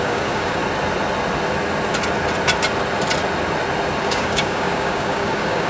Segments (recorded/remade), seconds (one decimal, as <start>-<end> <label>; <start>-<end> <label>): 0.0-0.6 remade; 0.6-4.0 recorded; 4.0-5.7 remade